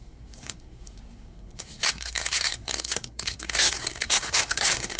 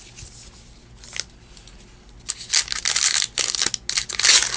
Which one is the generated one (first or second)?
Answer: first